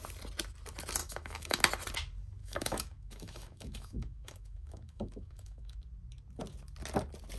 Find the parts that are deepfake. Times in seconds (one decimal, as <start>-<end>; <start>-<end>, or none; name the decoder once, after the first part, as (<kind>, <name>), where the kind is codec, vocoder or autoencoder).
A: 1.0-1.6 (autoencoder, DAC-VAE); 2.4-5.8